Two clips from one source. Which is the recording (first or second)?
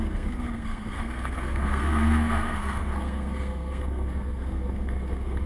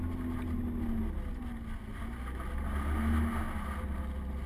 second